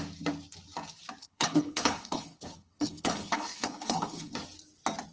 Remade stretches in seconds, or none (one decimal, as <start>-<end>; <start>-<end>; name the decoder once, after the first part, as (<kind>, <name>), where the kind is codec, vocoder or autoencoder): 1.2-4.3 (codec, HILCodec)